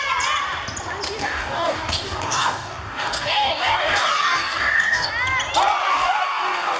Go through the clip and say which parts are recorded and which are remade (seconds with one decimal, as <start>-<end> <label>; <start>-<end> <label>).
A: 0.0-1.2 recorded; 1.2-5.1 remade; 5.1-5.9 recorded; 5.9-6.8 remade